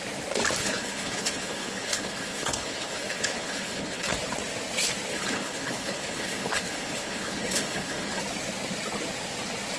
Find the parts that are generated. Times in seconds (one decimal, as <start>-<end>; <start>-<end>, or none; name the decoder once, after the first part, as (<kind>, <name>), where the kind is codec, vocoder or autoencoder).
0.6-4.1 (codec, HILCodec); 5.1-8.2

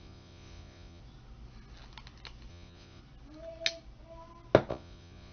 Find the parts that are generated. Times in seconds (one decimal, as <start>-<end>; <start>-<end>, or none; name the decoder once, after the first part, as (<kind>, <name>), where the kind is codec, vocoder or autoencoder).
0.0-1.0 (vocoder, Vocos); 2.5-3.0; 4.7-5.3